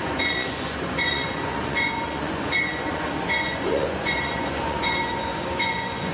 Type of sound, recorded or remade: remade